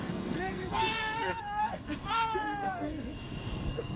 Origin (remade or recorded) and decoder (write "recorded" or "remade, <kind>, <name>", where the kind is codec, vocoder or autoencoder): remade, codec, SNAC